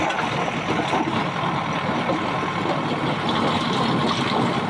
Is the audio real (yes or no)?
yes